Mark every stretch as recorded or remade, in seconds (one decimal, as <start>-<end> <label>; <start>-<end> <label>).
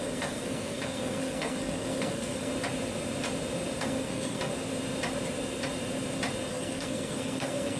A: 0.0-2.5 remade; 2.5-3.8 recorded; 3.8-4.5 remade; 4.5-6.5 recorded; 6.5-7.8 remade